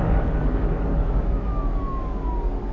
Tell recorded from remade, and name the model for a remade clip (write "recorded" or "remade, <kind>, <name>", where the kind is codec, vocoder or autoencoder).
remade, codec, DAC